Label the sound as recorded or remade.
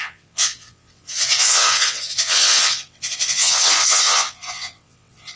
remade